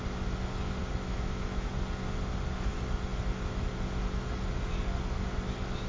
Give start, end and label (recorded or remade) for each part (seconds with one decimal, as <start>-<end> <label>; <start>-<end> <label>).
0.0-0.8 recorded; 0.8-1.7 remade; 1.7-5.9 recorded